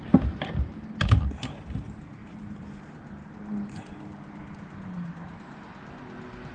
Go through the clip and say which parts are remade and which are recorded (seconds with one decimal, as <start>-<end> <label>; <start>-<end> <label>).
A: 0.0-2.2 recorded; 2.2-2.8 remade; 2.8-3.2 recorded; 3.2-3.8 remade; 3.8-6.5 recorded

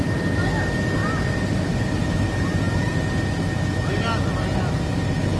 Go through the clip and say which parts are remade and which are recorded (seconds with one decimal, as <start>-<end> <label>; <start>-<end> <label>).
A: 0.0-5.4 recorded

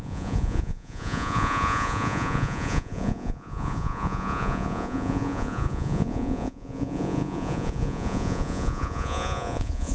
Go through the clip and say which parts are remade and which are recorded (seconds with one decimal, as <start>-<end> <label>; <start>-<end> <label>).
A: 0.0-9.9 remade

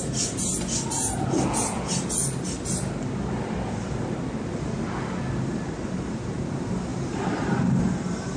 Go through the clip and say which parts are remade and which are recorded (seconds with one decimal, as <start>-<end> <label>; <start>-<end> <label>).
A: 0.0-8.4 recorded

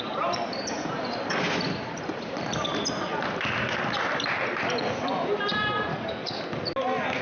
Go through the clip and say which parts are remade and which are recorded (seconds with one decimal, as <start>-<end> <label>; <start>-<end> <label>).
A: 0.0-5.9 recorded; 5.9-6.4 remade; 6.4-7.2 recorded

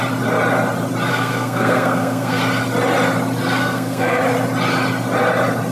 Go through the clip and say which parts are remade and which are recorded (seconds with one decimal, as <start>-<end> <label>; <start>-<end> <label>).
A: 0.0-1.1 recorded; 1.1-2.4 remade; 2.4-3.6 recorded; 3.6-4.2 remade; 4.2-5.7 recorded